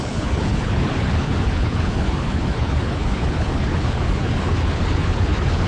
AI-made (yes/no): yes